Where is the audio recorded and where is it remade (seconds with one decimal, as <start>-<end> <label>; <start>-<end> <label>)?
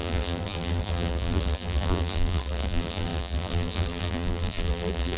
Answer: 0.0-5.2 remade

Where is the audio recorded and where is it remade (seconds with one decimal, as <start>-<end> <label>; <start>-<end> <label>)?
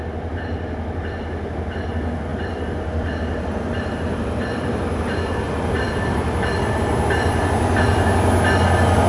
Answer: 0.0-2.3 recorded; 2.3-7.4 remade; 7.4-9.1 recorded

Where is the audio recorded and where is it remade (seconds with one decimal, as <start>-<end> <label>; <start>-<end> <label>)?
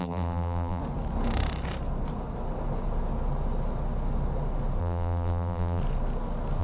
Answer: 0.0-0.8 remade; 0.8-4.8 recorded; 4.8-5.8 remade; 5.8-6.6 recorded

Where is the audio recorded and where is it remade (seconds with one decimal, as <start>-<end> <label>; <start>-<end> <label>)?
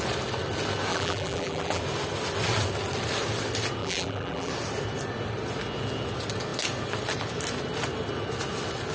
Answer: 0.0-0.9 recorded; 0.9-1.8 remade; 1.8-3.8 recorded; 3.8-4.5 remade; 4.5-8.9 recorded